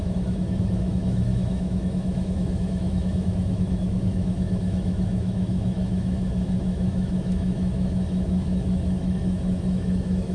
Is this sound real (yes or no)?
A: no